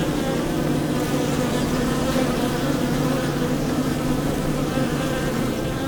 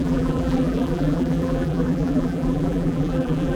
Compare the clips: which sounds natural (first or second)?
first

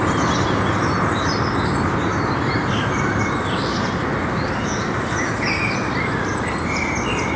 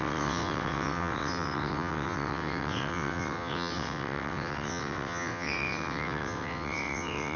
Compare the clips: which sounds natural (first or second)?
first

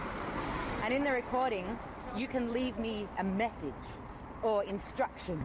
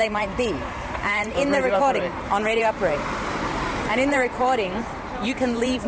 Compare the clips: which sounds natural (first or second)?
first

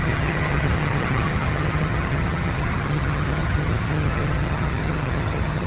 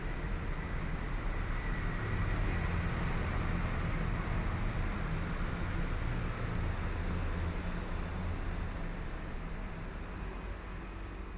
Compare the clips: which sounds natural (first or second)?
second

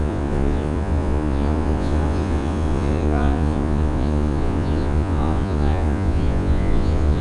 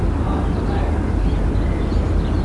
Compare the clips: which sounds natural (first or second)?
second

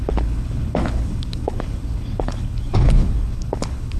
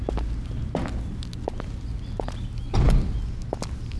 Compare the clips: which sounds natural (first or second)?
second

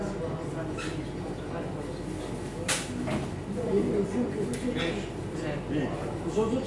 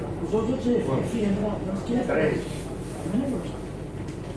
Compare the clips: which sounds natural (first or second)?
first